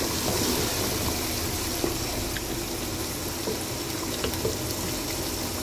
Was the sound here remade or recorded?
recorded